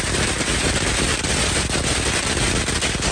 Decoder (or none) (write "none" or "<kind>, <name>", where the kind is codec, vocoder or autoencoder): none